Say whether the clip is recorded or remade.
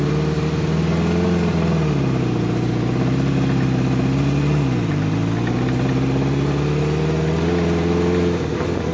recorded